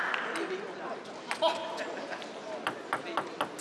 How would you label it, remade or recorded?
recorded